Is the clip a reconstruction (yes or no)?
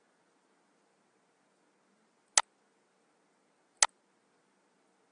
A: no